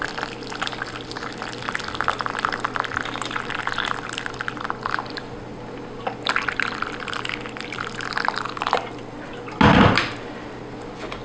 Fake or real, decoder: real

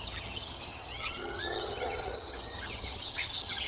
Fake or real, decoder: fake, vocoder, HiFi-GAN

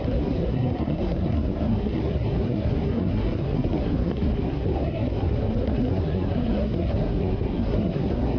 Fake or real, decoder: fake, codec, SNAC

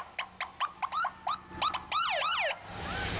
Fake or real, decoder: real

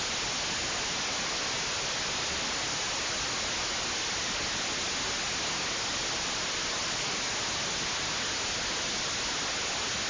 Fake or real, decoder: real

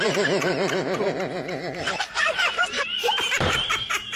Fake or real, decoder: fake, vocoder, BigVGAN v2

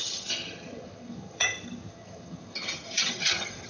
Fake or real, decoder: fake, vocoder, HiFi-GAN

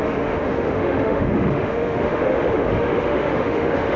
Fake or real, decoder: fake, autoencoder, DAC-VAE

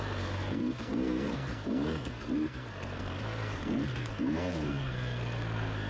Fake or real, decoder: fake, codec, SNAC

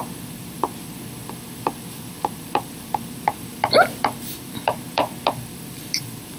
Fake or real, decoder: fake, vocoder, BigVGAN v2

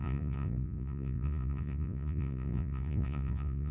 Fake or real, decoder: fake, vocoder, Vocos